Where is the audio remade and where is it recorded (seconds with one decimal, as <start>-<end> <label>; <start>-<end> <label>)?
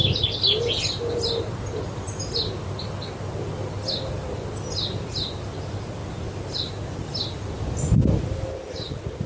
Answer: 0.0-9.3 recorded